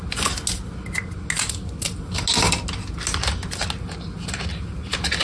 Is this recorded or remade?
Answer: recorded